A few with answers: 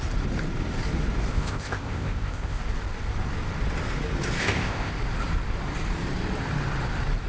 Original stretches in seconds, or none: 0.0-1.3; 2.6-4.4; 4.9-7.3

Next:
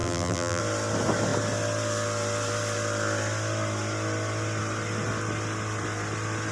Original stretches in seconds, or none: 0.6-6.5

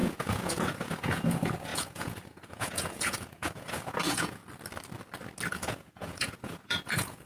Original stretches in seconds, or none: 4.4-5.5

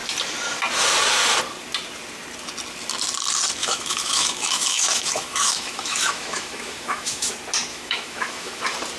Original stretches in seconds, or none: 0.0-3.6; 7.3-7.7; 8.6-9.0

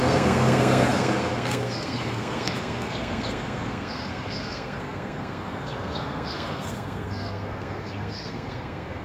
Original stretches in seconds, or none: none

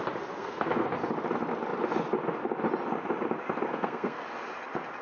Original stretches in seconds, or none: 0.0-0.4; 0.9-3.7; 4.2-5.0